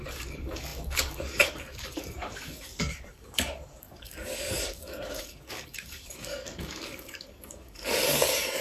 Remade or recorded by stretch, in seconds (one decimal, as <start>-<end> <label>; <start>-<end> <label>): 0.0-8.6 remade